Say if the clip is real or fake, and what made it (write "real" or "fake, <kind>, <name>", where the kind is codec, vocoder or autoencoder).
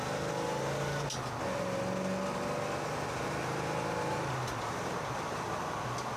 real